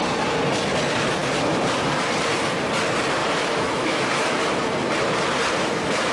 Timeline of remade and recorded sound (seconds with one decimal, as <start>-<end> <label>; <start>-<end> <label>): 0.0-3.2 recorded; 3.2-4.4 remade; 4.4-6.1 recorded